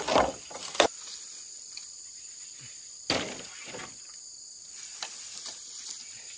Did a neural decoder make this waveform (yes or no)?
no